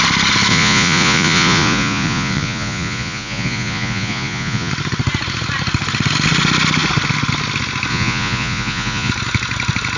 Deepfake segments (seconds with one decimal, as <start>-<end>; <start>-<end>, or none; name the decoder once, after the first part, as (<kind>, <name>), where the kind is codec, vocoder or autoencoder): 0.5-4.7 (vocoder, Vocos); 7.9-9.1